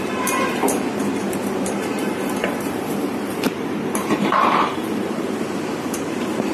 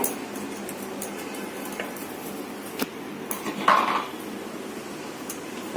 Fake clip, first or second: first